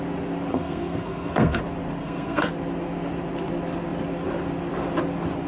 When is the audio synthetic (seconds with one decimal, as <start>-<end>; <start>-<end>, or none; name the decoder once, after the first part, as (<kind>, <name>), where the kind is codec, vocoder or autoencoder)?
0.5-1.6 (codec, SNAC); 2.0-2.5